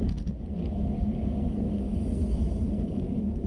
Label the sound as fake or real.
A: fake